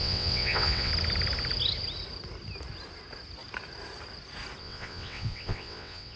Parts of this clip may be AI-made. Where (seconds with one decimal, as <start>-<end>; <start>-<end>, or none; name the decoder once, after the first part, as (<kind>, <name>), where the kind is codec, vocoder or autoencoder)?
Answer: 0.0-0.9 (vocoder, WaveNeXt); 4.6-6.2